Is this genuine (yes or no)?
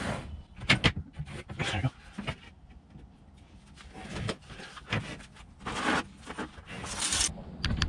yes